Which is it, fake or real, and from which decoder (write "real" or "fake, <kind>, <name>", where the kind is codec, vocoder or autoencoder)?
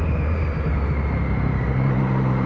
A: fake, vocoder, BigVGAN v2